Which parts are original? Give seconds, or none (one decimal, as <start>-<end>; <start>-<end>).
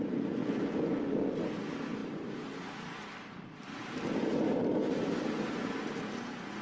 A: 0.0-0.4; 1.1-6.6